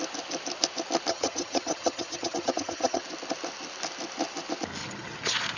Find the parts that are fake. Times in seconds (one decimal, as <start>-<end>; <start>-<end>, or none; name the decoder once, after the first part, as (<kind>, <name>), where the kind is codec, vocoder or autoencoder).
1.1-3.0 (vocoder, HiFi-GAN); 4.8-5.6